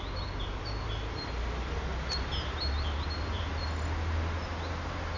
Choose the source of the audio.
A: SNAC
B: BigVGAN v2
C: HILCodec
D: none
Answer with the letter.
D